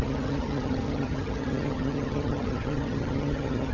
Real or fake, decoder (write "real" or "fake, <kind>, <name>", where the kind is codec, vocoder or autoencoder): fake, vocoder, HiFi-GAN